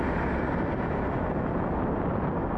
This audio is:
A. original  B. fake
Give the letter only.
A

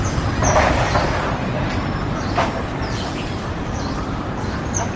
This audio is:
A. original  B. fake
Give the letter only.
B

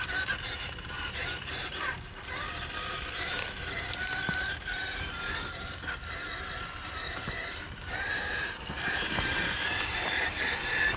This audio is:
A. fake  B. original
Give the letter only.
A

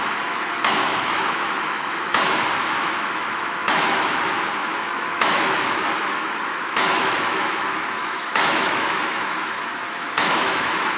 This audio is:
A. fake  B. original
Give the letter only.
A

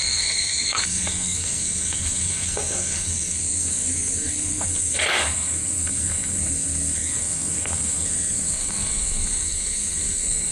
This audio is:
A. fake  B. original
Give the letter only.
A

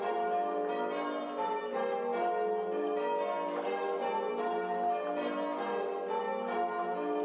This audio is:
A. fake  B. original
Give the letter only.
B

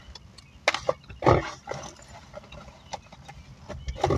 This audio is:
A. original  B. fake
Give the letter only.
A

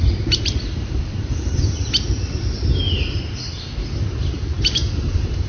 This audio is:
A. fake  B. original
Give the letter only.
A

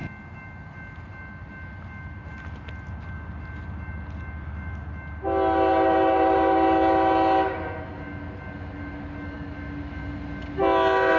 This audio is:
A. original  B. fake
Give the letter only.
A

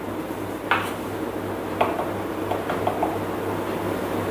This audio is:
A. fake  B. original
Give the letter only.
B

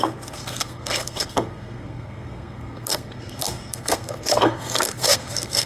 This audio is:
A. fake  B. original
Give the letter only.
A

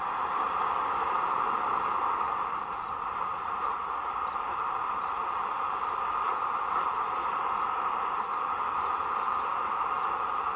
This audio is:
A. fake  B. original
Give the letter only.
A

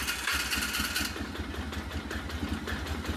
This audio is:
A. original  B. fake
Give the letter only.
A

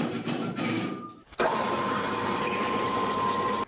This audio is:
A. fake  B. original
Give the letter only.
A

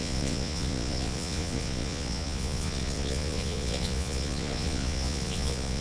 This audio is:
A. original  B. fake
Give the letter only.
B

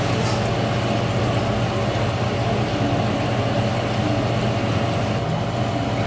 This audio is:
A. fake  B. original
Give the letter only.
B